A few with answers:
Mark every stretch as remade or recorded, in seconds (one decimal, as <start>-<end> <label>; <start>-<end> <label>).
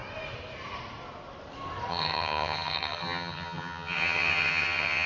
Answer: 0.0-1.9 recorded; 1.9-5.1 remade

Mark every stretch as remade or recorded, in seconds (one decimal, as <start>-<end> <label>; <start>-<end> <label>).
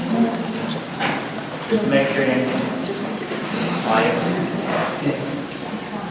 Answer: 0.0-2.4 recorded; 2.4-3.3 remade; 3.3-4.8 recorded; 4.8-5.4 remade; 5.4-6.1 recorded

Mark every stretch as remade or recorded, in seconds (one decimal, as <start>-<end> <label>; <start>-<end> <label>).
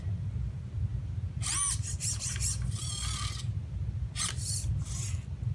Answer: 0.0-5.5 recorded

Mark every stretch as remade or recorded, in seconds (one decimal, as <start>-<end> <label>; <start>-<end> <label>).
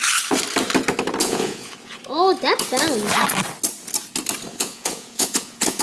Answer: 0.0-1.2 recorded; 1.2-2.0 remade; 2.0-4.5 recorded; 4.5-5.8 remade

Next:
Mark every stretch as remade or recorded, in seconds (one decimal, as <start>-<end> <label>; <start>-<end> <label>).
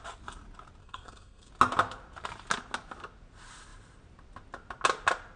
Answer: 0.0-0.8 recorded; 0.8-1.5 remade; 1.5-5.4 recorded